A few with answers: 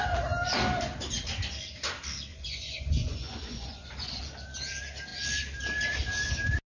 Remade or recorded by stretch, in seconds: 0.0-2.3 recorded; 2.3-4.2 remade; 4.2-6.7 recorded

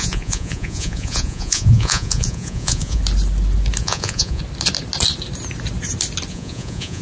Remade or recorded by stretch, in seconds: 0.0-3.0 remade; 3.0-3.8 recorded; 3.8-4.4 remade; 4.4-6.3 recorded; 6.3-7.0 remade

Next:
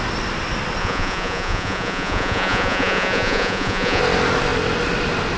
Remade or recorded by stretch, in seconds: 0.0-0.8 recorded; 0.8-4.0 remade; 4.0-5.4 recorded